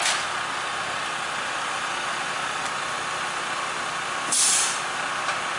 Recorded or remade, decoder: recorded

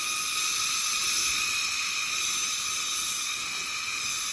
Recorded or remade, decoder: recorded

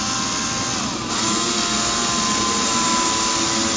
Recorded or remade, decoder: recorded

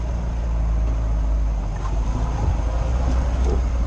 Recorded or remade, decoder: recorded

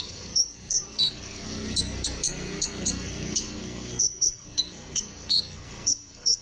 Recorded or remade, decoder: remade, codec, SNAC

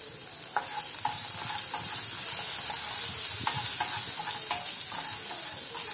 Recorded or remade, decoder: recorded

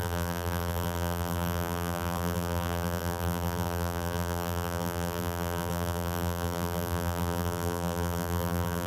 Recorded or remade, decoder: remade, vocoder, BigVGAN v2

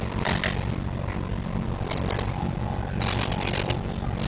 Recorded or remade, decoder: recorded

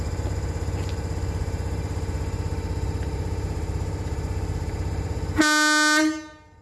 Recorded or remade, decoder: recorded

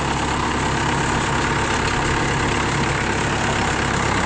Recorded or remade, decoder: recorded